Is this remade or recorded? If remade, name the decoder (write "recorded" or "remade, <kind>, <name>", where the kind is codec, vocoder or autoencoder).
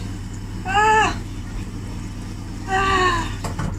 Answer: recorded